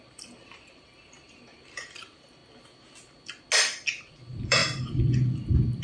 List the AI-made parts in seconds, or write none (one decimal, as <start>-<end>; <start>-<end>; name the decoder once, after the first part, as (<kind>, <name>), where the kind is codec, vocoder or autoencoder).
0.0-2.4 (vocoder, BigVGAN v2); 4.1-4.6

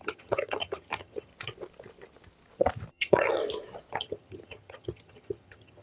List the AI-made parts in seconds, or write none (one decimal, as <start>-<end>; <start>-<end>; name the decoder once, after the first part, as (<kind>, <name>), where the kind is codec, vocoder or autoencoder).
0.0-1.3 (vocoder, HiFi-GAN); 2.9-3.4; 3.9-5.8